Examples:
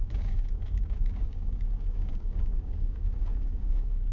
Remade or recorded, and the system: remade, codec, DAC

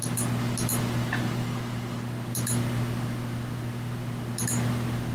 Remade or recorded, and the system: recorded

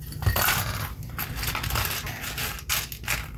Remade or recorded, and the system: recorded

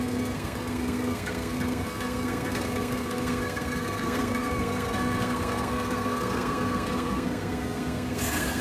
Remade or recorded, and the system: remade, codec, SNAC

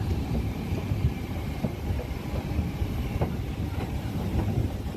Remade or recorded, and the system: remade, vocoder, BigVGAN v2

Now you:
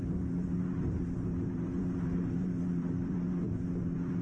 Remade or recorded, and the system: remade, vocoder, BigVGAN v2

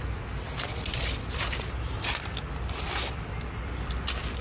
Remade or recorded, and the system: recorded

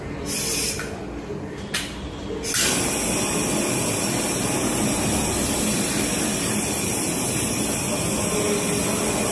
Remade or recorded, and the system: recorded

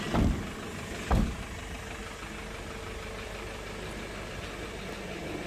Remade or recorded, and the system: recorded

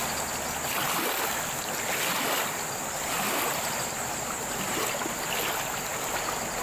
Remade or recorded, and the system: recorded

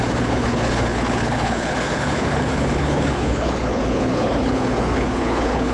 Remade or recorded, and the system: remade, codec, HILCodec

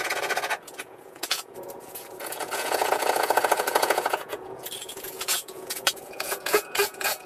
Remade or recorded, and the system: remade, vocoder, Vocos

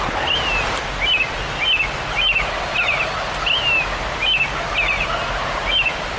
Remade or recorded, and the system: recorded